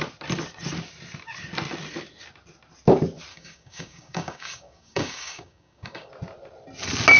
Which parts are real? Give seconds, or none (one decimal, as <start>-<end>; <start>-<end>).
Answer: 0.0-3.3; 6.1-7.2